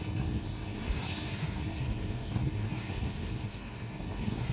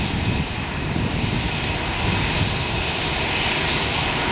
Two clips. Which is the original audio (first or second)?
second